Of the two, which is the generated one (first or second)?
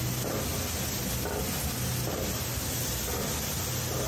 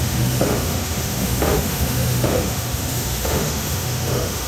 second